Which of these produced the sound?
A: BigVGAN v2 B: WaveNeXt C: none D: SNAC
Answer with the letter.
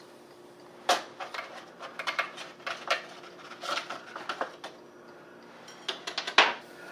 C